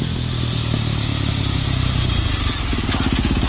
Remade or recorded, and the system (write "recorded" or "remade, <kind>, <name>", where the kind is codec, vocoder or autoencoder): recorded